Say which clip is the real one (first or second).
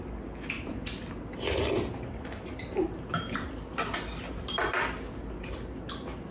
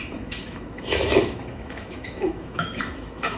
first